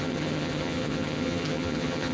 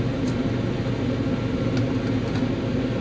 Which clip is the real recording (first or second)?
second